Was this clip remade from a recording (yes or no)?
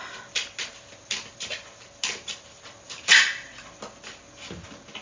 no